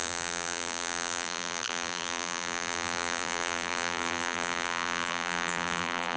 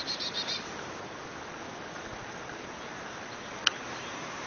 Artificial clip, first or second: first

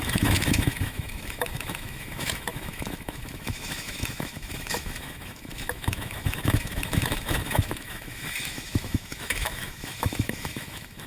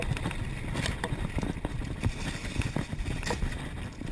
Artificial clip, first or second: first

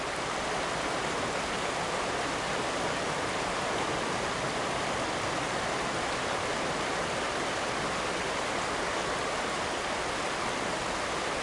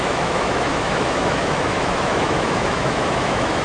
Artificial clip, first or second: second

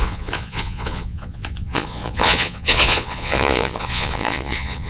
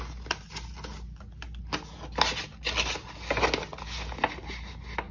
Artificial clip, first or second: first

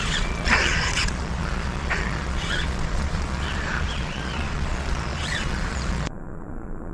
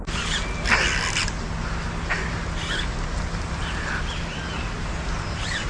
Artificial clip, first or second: first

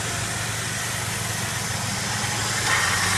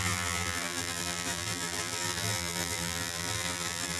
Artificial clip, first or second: second